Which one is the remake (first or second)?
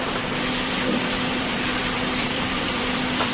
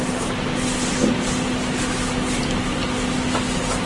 first